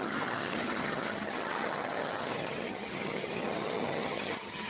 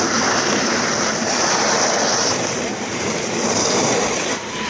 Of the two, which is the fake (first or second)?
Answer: first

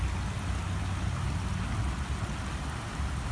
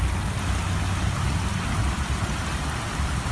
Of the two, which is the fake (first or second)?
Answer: second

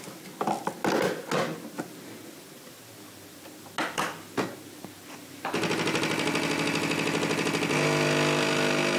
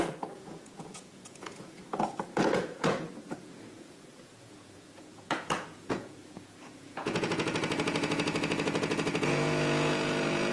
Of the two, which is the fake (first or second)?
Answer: second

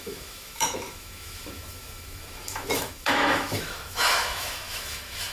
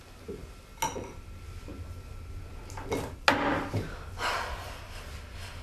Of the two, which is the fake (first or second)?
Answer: first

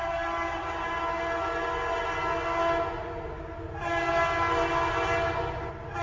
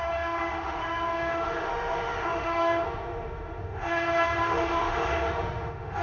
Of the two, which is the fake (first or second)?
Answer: second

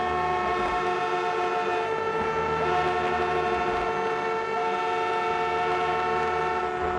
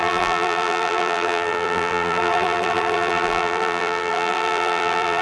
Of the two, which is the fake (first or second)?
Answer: second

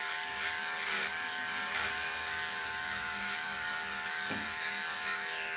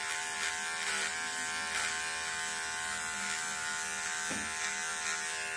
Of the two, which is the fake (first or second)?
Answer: first